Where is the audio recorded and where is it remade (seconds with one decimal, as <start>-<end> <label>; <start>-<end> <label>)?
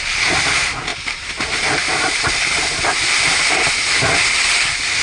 0.0-5.0 recorded